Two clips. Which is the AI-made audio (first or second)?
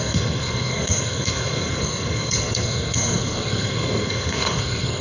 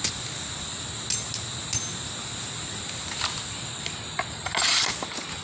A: first